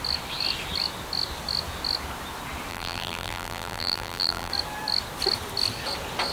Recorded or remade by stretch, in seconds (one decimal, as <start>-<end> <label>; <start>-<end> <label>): 0.0-2.7 recorded; 2.7-4.5 remade; 4.5-6.3 recorded